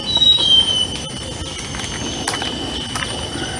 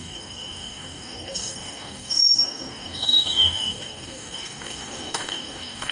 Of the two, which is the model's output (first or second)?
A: second